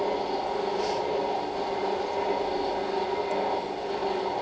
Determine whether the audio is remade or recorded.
recorded